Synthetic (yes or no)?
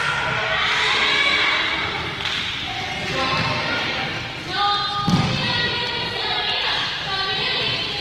no